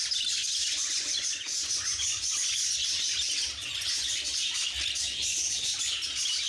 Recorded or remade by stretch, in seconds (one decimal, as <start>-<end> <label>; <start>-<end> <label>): 0.0-0.4 recorded; 0.4-2.8 remade; 2.8-3.6 recorded; 3.6-4.2 remade; 4.2-5.1 recorded; 5.1-5.7 remade; 5.7-6.5 recorded